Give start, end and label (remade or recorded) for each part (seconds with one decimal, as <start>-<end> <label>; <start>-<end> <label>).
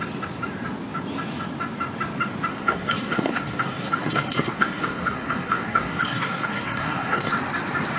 0.0-2.5 recorded; 2.5-7.3 remade; 7.3-8.0 recorded